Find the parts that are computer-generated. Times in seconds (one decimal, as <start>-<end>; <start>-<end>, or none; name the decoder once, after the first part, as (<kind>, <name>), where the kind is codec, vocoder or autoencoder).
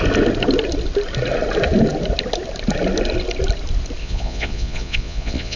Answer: 4.0-5.6 (vocoder, Vocos)